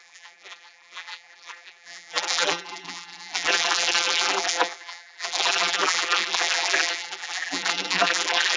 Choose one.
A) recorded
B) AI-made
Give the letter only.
B